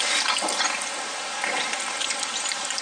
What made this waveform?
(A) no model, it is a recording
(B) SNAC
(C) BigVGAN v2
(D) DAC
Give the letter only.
A